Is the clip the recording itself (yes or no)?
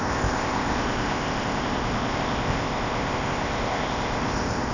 no